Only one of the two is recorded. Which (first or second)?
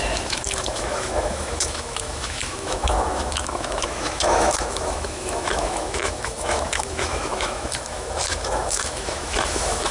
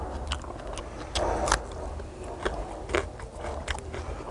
second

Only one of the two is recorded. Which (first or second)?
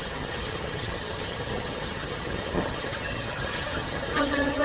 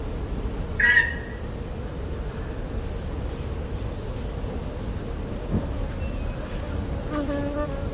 second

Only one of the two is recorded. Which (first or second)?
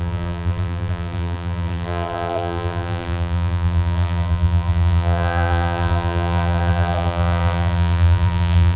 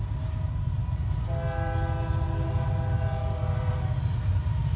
second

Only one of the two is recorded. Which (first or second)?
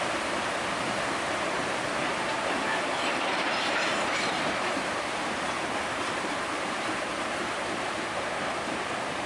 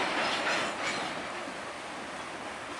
second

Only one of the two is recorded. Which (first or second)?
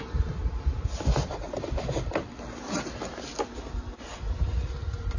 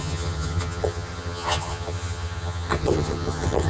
first